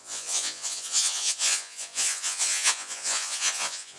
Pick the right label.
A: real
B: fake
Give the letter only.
B